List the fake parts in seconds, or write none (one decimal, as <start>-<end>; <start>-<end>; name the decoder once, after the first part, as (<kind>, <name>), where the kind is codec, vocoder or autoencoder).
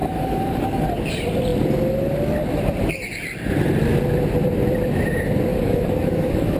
0.0-1.1 (codec, DAC); 5.5-6.6